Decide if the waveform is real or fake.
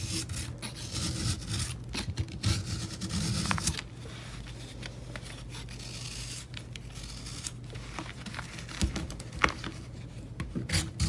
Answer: real